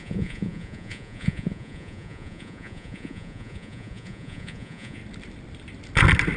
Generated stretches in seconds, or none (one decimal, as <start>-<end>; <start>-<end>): 0.0-5.0